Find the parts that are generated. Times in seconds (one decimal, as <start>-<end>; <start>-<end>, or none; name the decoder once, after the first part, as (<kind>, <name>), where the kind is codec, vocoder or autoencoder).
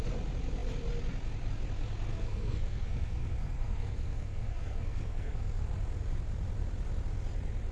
2.1-5.6 (codec, SNAC)